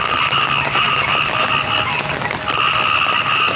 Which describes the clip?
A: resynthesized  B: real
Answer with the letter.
B